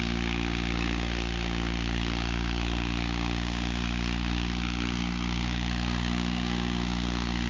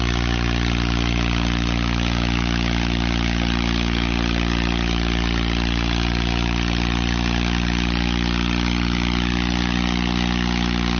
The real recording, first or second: second